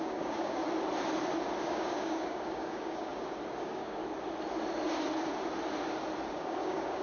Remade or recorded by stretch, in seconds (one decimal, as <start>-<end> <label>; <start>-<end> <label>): 0.0-0.6 remade; 0.6-1.6 recorded; 1.6-3.1 remade; 3.1-3.6 recorded; 3.6-4.0 remade; 4.0-6.3 recorded; 6.3-7.0 remade